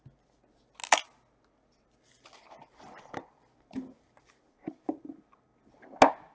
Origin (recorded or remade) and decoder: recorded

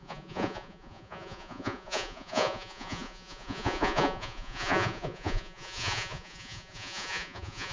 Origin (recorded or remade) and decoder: remade, vocoder, Vocos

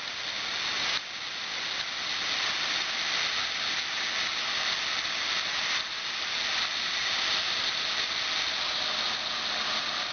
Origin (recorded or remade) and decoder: recorded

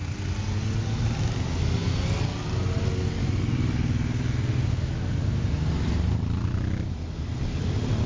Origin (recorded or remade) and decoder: recorded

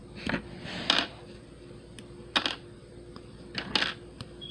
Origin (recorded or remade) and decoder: recorded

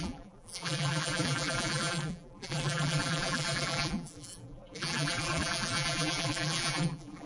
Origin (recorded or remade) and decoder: remade, vocoder, BigVGAN v2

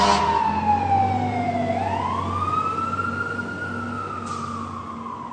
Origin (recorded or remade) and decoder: recorded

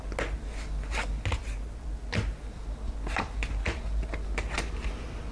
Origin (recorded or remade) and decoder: recorded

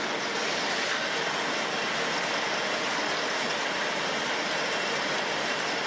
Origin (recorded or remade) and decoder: recorded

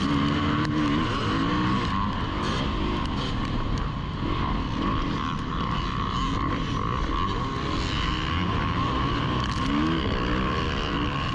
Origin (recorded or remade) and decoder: recorded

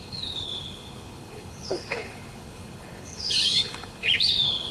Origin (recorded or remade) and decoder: remade, codec, HILCodec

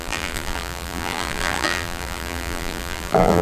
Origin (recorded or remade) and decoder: remade, vocoder, BigVGAN v2